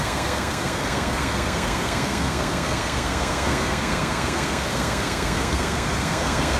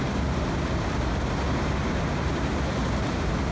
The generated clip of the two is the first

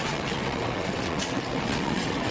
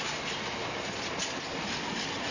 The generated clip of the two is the first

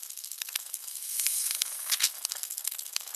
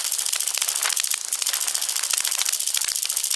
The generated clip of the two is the first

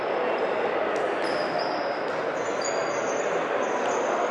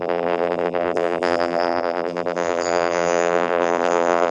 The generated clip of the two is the second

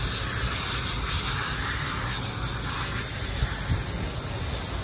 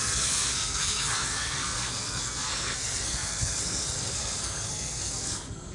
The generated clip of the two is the second